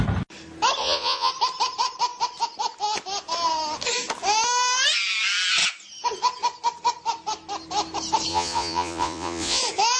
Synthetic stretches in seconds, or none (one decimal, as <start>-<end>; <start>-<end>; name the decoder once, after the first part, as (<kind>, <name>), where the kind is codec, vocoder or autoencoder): 0.8-1.3 (vocoder, Vocos); 8.3-9.6